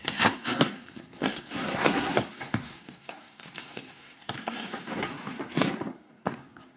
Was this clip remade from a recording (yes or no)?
yes